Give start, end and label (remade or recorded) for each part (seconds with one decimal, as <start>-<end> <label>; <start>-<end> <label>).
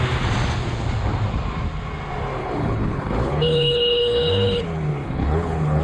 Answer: 0.0-2.4 recorded; 2.4-5.8 remade